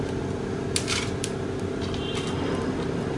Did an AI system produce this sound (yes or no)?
no